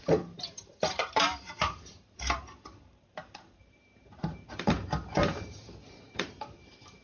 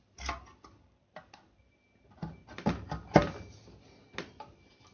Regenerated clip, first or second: first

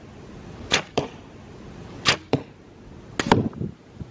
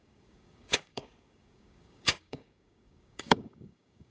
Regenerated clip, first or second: second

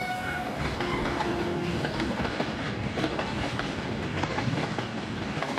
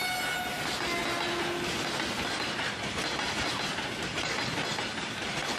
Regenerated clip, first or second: first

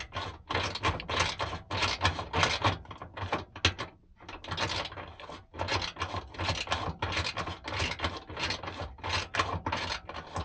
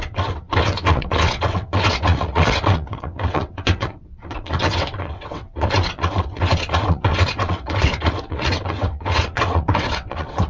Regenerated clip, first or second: second